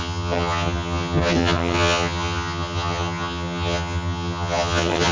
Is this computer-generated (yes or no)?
yes